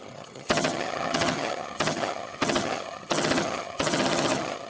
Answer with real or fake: fake